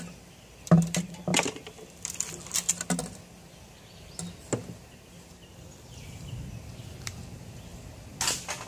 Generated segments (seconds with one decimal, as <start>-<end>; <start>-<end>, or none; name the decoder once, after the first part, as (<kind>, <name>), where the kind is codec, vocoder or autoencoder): none